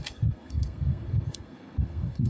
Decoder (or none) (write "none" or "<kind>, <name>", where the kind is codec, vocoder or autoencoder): codec, SNAC